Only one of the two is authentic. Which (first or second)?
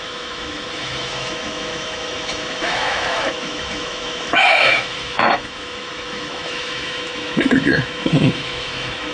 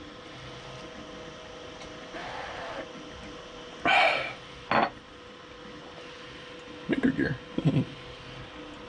second